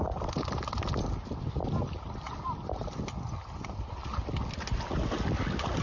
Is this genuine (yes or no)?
yes